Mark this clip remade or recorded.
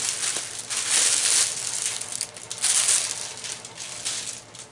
recorded